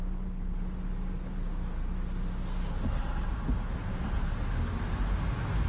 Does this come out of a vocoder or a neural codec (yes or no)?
no